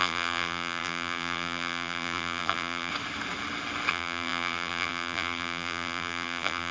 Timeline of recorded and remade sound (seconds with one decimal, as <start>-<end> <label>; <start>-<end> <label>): 0.0-2.9 remade; 2.9-3.9 recorded; 3.9-6.7 remade